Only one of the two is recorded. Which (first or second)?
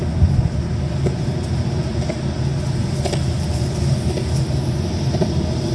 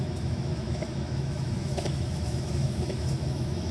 first